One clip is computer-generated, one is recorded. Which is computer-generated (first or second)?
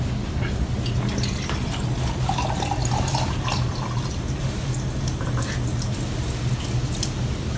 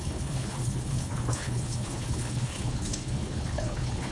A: second